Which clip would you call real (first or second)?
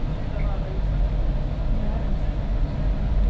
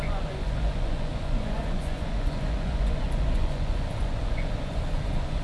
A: first